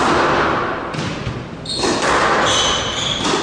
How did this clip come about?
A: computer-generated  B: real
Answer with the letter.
B